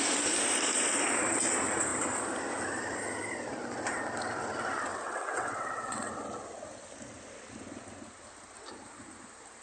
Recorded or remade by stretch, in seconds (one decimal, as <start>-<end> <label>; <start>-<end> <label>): 0.0-4.9 recorded; 4.9-6.1 remade; 6.1-9.6 recorded